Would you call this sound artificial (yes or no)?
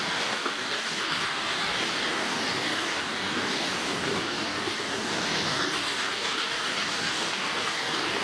yes